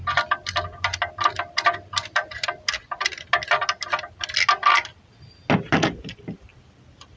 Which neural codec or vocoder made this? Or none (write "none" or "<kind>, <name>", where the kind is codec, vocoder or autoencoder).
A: none